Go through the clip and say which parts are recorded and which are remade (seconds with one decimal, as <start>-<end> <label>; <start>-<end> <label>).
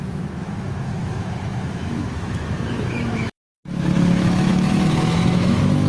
0.0-5.9 remade